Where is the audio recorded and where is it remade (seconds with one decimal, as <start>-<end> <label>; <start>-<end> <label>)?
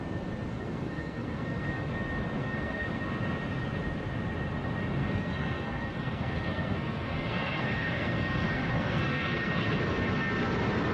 0.0-0.5 recorded; 0.5-1.9 remade; 1.9-2.4 recorded; 2.4-3.0 remade; 3.0-5.0 recorded; 5.0-9.8 remade; 9.8-10.9 recorded